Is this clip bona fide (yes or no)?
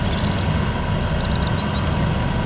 yes